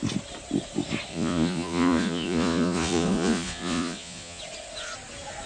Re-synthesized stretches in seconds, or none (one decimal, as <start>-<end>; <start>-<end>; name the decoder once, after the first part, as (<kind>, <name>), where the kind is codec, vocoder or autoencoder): 1.1-4.4 (vocoder, Vocos)